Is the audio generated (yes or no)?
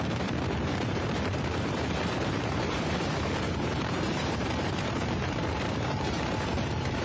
yes